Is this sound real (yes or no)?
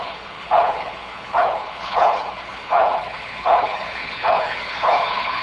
no